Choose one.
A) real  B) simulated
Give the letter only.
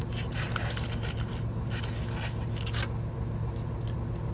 A